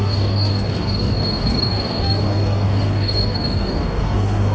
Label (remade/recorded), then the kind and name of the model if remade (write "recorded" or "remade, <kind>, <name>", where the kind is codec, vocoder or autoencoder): remade, codec, DAC